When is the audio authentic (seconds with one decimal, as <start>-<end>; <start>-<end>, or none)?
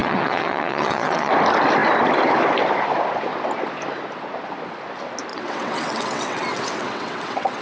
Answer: 1.3-5.3